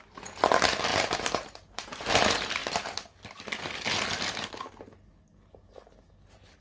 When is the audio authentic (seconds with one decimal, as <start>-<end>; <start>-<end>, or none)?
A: 0.0-0.9; 2.1-6.6